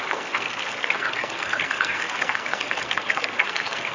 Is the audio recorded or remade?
remade